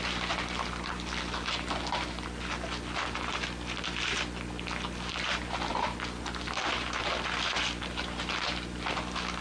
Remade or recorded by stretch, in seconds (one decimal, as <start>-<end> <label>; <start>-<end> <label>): 0.0-9.4 recorded